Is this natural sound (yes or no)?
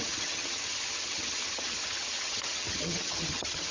no